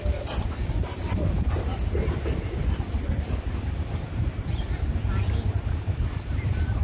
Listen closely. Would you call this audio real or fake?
real